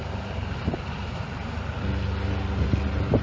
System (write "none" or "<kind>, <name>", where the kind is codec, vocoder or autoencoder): none